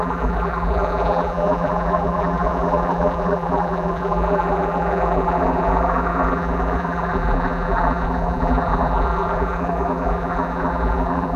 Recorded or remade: remade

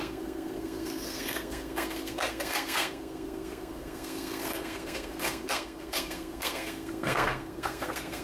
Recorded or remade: remade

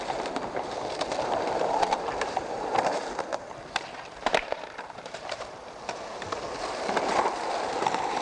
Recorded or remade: remade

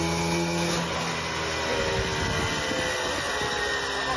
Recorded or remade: recorded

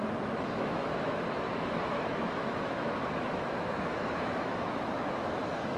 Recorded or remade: remade